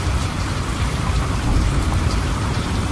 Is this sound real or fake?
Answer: fake